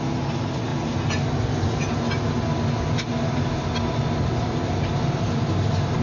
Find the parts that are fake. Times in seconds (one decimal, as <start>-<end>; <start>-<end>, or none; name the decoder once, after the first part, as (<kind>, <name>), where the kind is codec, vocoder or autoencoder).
none